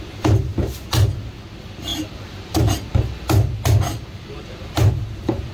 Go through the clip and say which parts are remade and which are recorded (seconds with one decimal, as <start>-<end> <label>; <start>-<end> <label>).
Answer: 0.0-1.9 recorded; 1.9-2.9 remade; 2.9-5.5 recorded